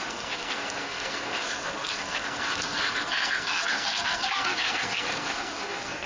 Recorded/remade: remade